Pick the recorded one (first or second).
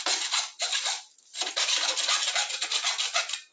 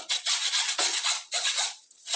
first